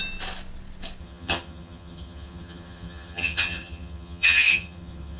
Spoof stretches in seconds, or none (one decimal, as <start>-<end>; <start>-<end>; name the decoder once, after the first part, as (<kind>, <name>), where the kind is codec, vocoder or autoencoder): 1.0-5.2 (vocoder, HiFi-GAN)